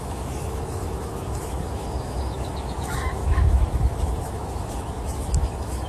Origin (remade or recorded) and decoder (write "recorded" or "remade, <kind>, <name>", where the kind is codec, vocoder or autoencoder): remade, autoencoder, DAC-VAE